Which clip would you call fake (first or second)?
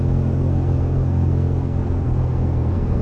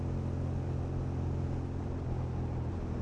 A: first